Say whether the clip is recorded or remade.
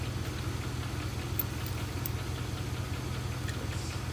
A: recorded